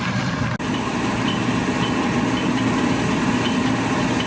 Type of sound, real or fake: real